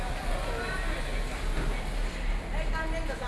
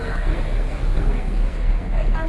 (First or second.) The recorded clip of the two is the first